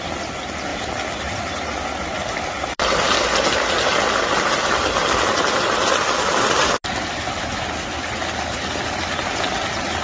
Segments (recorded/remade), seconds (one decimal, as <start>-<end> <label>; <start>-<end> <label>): 0.0-0.7 recorded; 0.7-3.5 remade; 3.5-3.9 recorded; 3.9-5.9 remade; 5.9-10.0 recorded